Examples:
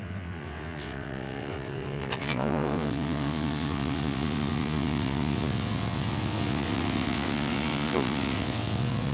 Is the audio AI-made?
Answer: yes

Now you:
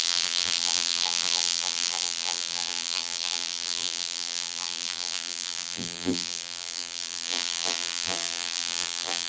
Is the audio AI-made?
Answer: yes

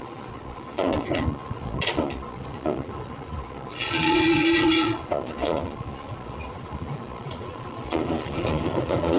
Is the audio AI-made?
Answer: yes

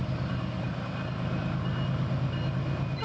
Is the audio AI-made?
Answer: no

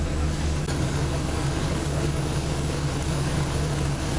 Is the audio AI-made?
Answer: yes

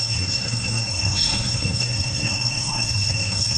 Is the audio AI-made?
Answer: yes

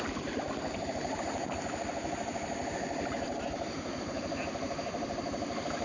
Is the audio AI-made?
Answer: yes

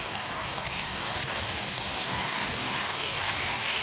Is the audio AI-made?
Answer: yes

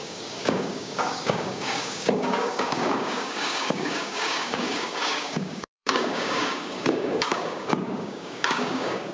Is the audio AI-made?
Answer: yes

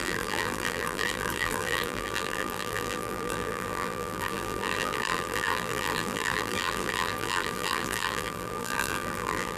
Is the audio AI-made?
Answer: yes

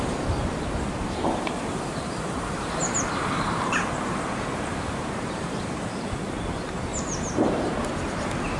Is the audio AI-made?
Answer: yes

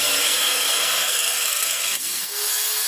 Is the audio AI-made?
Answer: yes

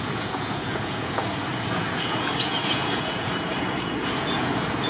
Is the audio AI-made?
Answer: yes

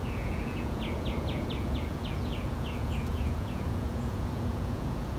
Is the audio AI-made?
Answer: yes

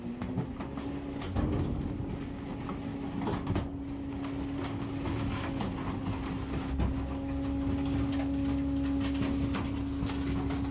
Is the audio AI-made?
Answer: no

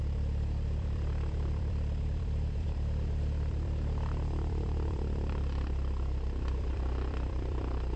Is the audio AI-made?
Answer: yes